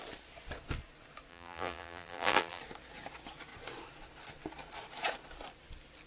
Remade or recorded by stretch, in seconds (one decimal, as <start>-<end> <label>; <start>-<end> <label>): 0.0-1.3 recorded; 1.3-2.6 remade; 2.6-6.1 recorded